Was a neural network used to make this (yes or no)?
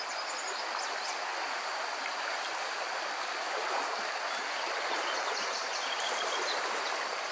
no